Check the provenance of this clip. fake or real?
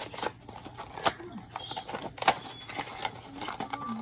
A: real